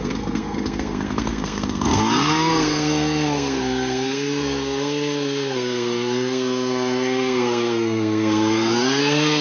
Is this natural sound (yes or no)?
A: no